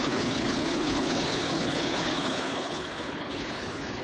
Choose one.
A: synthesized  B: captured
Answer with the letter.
A